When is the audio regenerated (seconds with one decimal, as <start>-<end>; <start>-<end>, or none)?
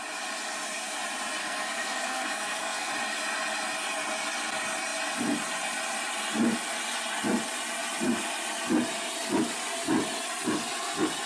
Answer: 1.4-2.9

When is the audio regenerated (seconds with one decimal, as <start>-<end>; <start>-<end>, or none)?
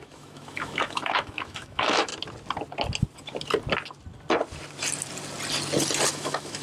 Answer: 0.0-2.1; 6.1-6.6